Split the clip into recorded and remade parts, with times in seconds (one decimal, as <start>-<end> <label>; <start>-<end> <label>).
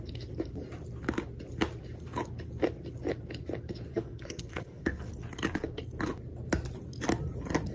0.0-3.9 recorded; 3.9-5.1 remade; 5.1-7.7 recorded